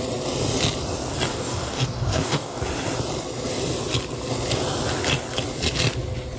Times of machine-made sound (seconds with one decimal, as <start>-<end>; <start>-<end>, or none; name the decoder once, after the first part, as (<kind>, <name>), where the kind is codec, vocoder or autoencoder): 1.3-2.6 (codec, DAC)